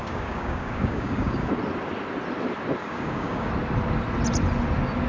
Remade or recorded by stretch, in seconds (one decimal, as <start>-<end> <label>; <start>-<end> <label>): 0.0-1.5 remade; 1.5-2.8 recorded; 2.8-3.5 remade; 3.5-5.1 recorded